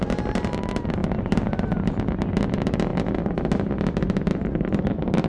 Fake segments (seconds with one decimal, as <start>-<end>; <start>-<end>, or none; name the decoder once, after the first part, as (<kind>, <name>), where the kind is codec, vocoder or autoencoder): none